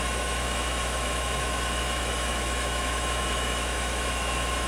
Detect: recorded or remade remade